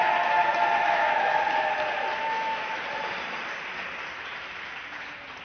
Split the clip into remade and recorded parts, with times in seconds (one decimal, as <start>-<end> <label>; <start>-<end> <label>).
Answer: 0.0-0.8 recorded; 0.8-1.4 remade; 1.4-2.2 recorded; 2.2-2.7 remade; 2.7-5.4 recorded